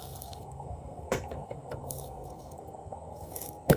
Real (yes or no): no